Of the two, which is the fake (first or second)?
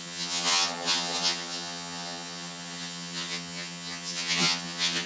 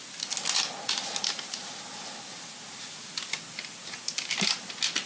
first